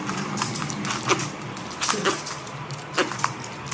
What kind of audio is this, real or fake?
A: real